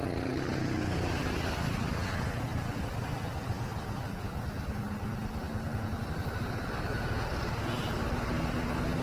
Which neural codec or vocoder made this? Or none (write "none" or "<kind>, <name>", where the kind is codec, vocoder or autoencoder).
none